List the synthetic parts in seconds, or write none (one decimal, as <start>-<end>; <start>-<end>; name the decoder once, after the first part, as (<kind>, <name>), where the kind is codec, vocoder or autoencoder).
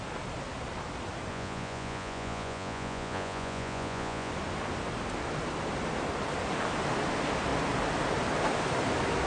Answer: 1.3-4.3 (vocoder, Vocos)